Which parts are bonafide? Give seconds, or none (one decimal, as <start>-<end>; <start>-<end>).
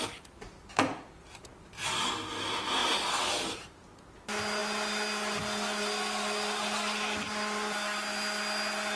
0.0-9.0